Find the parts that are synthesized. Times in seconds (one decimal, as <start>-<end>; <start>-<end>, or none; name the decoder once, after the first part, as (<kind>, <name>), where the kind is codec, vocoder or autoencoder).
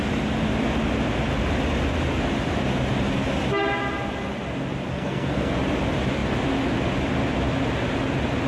4.9-5.5 (codec, SNAC)